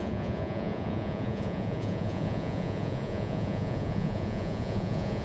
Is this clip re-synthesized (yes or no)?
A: yes